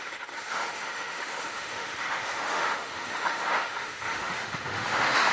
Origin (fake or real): fake